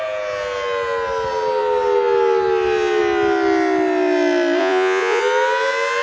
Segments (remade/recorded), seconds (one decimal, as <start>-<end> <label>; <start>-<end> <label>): 0.0-4.6 recorded; 4.6-5.2 remade; 5.2-6.0 recorded

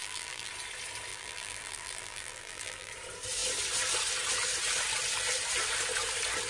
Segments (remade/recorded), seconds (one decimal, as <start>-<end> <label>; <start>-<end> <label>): 0.0-0.5 remade; 0.5-1.1 recorded; 1.1-2.9 remade; 2.9-6.5 recorded

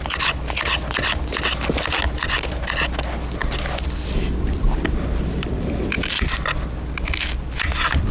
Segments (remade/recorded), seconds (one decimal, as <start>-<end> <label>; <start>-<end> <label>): 0.0-3.4 recorded; 3.4-6.5 remade; 6.5-8.1 recorded

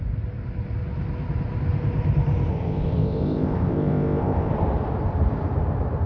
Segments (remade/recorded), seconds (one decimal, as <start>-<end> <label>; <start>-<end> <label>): 0.0-2.5 recorded; 2.5-4.5 remade; 4.5-6.1 recorded

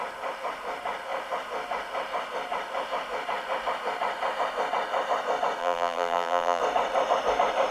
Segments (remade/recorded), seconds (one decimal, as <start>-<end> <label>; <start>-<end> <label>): 0.0-5.6 recorded; 5.6-6.6 remade; 6.6-7.7 recorded